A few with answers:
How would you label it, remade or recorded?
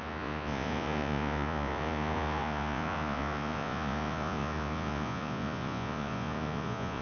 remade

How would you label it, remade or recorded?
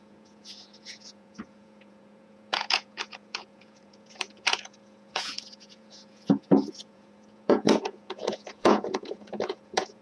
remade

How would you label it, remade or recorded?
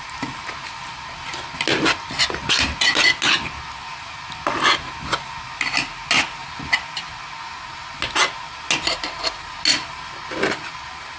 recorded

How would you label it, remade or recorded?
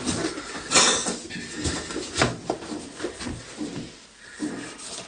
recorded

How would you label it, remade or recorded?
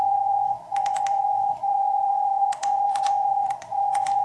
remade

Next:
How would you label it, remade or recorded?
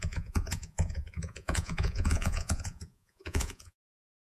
remade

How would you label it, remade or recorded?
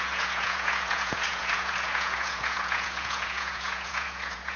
remade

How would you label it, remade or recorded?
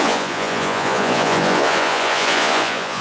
remade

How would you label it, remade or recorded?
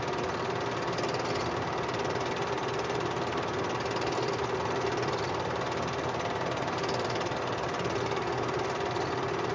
recorded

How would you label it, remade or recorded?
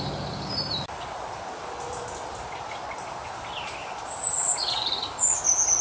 recorded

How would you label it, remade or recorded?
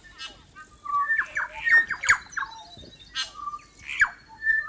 recorded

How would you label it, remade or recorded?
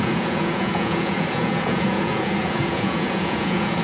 remade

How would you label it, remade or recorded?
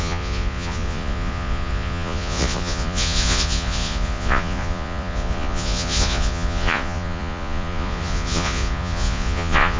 remade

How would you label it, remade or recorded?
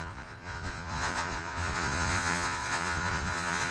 remade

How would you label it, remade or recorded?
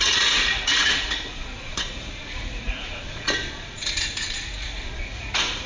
remade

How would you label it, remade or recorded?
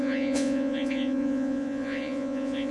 remade